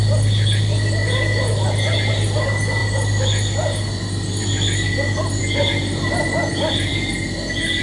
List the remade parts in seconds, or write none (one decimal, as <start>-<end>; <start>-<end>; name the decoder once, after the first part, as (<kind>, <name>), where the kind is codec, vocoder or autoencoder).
none